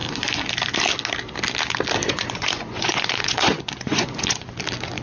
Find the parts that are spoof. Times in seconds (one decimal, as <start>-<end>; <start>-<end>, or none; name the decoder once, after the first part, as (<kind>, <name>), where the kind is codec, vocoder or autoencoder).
2.0-4.5 (vocoder, Vocos)